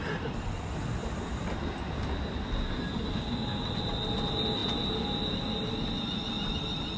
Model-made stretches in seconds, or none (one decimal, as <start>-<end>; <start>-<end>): none